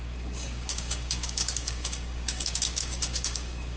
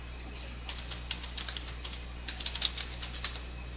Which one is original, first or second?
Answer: second